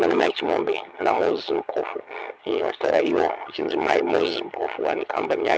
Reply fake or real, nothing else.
fake